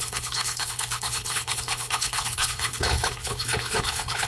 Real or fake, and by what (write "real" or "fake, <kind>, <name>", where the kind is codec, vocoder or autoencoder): fake, codec, HILCodec